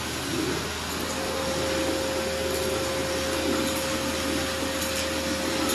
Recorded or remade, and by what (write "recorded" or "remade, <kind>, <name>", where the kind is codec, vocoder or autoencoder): recorded